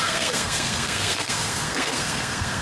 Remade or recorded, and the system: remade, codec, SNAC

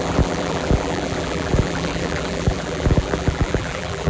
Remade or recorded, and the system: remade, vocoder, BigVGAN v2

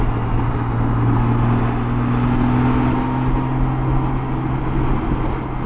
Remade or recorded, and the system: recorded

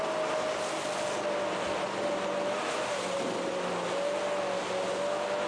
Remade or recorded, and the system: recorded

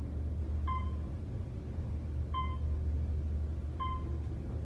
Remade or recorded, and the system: recorded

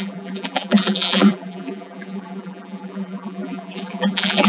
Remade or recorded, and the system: remade, vocoder, BigVGAN v2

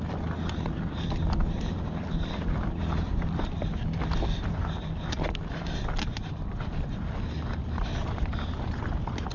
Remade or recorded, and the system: remade, vocoder, BigVGAN v2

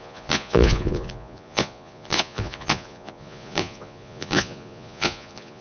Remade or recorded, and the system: remade, vocoder, Vocos